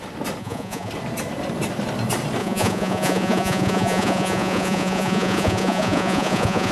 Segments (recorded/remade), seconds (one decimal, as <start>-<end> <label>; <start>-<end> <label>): 0.0-0.4 recorded; 0.4-0.9 remade; 0.9-2.4 recorded; 2.4-6.7 remade